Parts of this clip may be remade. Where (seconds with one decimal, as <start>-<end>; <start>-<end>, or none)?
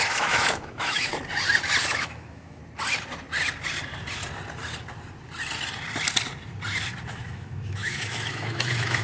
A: 0.0-1.1; 1.8-2.6; 7.1-9.0